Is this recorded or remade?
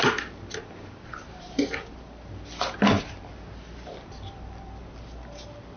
recorded